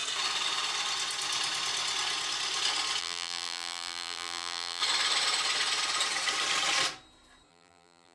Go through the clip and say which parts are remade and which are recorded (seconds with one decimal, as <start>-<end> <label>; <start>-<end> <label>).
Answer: 0.0-3.0 recorded; 3.0-4.8 remade; 4.8-7.5 recorded; 7.5-8.1 remade